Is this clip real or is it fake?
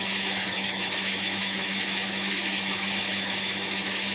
fake